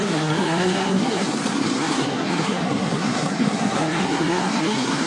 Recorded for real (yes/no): no